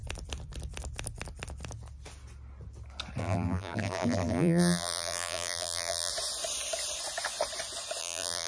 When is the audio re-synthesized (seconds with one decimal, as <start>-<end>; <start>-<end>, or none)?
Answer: 3.2-6.1; 8.0-8.5